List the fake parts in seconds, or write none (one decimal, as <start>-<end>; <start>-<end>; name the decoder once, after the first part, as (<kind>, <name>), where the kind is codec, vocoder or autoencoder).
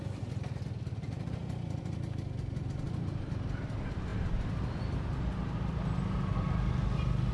none